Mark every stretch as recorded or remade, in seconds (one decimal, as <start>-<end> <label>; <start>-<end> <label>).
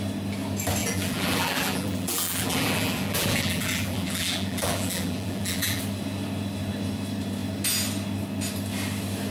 0.0-0.8 recorded; 0.8-5.8 remade; 5.8-9.3 recorded